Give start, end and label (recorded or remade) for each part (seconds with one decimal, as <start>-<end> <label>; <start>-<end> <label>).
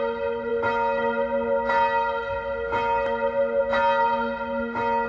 0.0-5.1 recorded